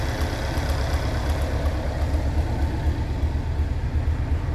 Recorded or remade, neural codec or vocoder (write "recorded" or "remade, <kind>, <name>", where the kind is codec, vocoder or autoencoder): recorded